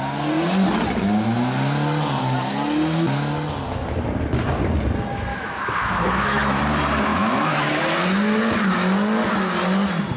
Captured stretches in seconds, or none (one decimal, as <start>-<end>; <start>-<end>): 0.0-5.3; 6.6-7.1; 7.7-10.2